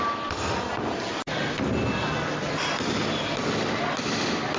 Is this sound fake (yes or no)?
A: no